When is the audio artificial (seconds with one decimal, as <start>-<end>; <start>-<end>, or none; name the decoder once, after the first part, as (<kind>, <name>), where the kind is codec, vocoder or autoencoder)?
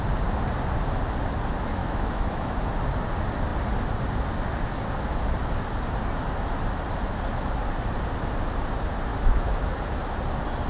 1.8-2.6 (autoencoder, DAC-VAE); 9.1-9.7